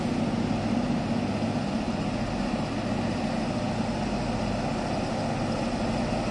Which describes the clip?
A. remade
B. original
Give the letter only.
B